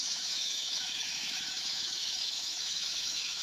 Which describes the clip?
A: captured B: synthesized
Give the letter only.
B